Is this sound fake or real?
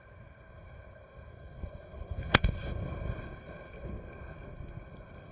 fake